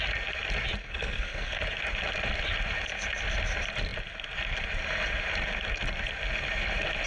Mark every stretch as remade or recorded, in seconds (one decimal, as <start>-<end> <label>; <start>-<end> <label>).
0.0-0.8 recorded; 0.8-1.6 remade; 1.6-7.1 recorded